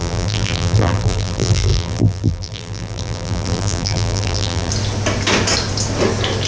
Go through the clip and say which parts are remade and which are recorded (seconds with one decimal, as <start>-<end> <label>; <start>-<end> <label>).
0.0-4.7 remade; 4.7-6.5 recorded

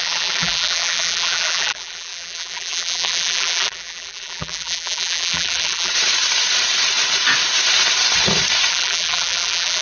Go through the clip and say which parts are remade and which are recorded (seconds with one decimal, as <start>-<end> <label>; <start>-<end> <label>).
0.0-5.9 remade; 5.9-8.7 recorded; 8.7-9.8 remade

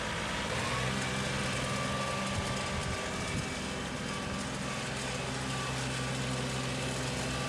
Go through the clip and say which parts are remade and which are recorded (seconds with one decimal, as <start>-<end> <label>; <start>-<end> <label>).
0.0-7.5 recorded

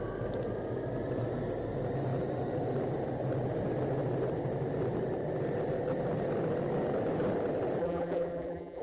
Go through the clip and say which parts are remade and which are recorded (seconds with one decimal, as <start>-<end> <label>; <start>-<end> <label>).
0.0-7.8 recorded; 7.8-8.8 remade

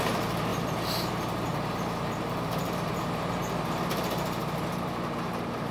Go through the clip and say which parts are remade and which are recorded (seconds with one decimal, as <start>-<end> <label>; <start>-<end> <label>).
0.0-0.5 recorded; 0.5-1.1 remade; 1.1-5.7 recorded

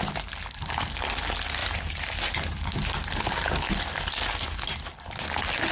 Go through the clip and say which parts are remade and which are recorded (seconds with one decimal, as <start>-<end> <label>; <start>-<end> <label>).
0.0-1.6 recorded; 1.6-2.2 remade; 2.2-5.7 recorded

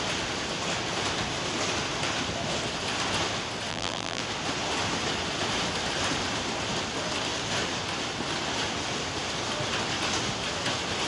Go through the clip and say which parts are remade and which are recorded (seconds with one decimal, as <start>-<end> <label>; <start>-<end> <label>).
0.0-3.7 recorded; 3.7-4.2 remade; 4.2-11.1 recorded

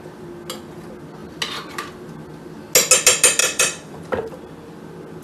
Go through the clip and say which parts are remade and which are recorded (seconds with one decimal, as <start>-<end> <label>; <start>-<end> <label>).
0.0-3.4 recorded; 3.4-4.4 remade; 4.4-5.2 recorded